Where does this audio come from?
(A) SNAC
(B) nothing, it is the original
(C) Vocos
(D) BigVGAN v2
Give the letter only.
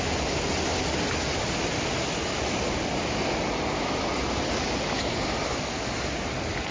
B